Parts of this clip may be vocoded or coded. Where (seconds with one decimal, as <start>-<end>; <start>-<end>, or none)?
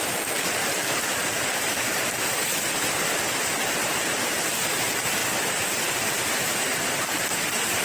none